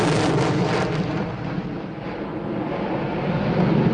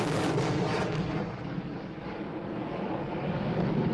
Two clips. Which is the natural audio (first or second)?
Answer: first